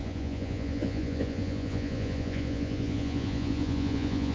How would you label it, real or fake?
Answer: fake